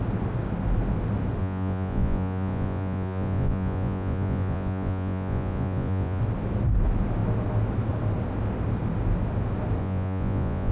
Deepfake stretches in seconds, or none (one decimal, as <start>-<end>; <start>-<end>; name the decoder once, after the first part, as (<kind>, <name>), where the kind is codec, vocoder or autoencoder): 1.4-6.2 (vocoder, Vocos); 9.8-10.7